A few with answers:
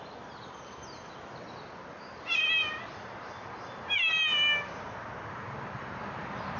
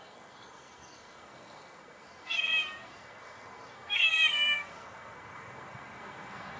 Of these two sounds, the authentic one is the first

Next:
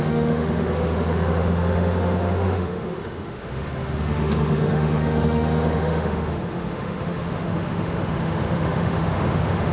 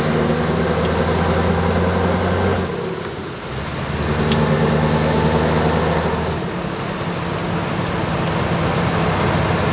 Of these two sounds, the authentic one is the second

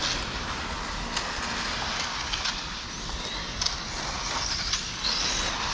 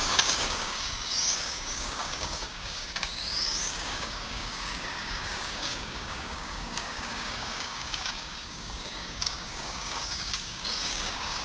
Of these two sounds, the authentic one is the first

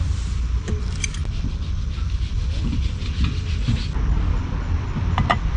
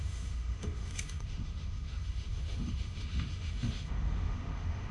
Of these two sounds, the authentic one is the first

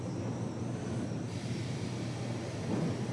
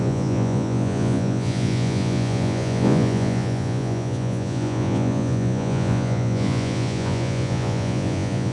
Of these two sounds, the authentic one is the first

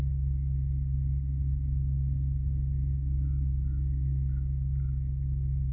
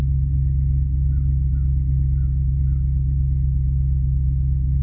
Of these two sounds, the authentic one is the second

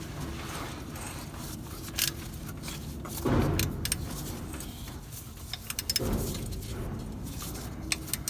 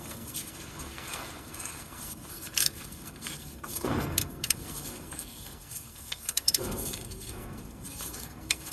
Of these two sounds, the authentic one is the first